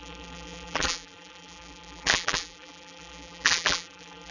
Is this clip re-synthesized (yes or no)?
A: yes